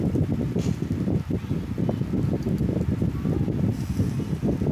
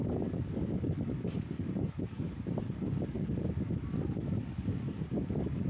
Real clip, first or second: first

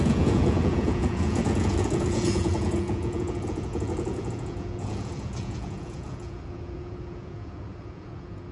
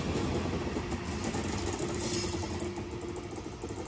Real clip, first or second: second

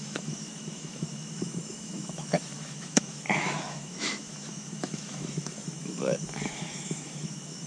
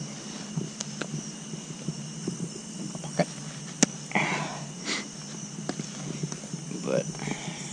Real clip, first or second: second